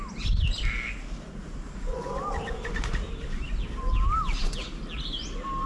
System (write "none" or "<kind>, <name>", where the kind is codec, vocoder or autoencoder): none